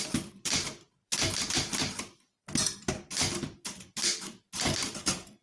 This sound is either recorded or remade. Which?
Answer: remade